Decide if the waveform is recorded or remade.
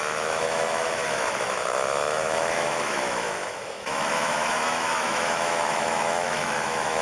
remade